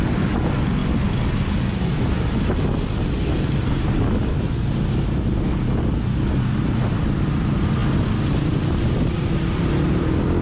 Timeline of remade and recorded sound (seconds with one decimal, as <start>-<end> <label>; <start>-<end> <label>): 0.0-10.4 recorded